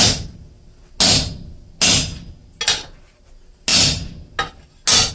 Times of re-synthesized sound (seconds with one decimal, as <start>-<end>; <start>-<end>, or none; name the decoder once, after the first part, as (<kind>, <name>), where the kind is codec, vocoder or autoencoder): none